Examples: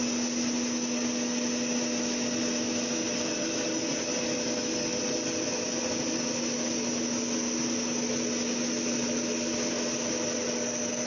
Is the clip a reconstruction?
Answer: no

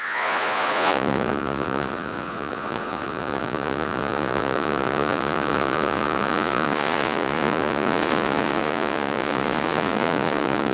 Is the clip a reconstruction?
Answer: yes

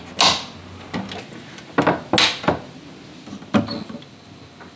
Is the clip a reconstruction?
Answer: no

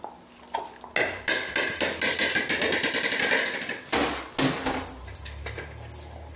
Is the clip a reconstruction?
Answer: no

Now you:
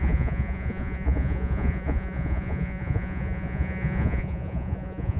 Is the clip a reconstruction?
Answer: yes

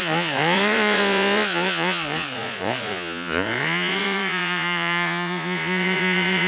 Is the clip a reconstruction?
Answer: yes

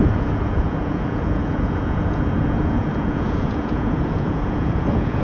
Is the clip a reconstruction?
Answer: yes